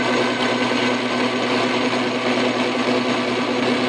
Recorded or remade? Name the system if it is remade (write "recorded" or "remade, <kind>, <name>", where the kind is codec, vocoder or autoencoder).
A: recorded